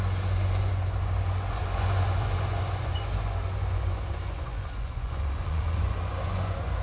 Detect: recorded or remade remade